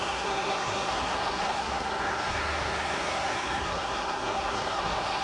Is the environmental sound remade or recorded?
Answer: remade